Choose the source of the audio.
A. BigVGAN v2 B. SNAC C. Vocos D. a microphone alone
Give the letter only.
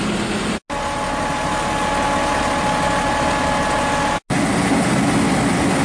D